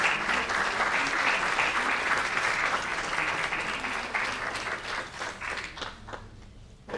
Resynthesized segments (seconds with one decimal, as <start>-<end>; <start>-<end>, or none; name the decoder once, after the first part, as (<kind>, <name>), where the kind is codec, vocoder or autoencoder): none